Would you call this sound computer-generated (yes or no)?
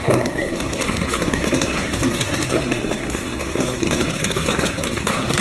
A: yes